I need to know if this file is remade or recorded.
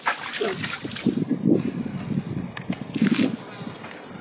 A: recorded